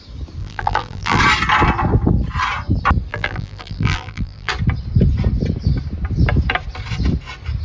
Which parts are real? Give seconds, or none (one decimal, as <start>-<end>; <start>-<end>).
0.0-0.4; 1.2-3.1; 4.5-7.6